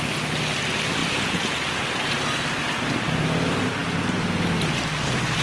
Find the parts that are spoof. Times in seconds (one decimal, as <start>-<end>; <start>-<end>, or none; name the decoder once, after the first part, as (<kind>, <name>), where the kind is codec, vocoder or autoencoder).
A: 1.0-1.8 (vocoder, Vocos)

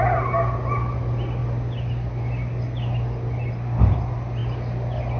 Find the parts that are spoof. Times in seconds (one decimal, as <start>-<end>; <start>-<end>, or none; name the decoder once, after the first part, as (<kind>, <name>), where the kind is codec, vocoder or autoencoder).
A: none